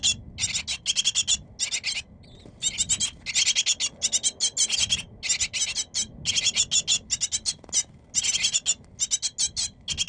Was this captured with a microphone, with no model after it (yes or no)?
yes